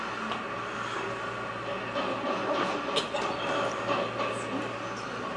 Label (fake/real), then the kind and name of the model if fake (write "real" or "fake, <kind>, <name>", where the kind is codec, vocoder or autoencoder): real